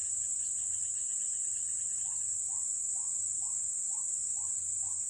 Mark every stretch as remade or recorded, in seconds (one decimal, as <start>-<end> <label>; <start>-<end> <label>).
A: 0.0-4.2 recorded; 4.2-5.1 remade